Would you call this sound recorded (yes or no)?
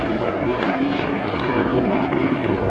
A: no